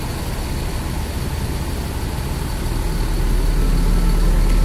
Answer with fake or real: real